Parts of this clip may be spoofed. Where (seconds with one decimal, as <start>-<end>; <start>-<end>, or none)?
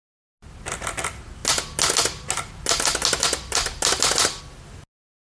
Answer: none